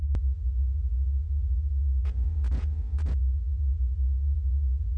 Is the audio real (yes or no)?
no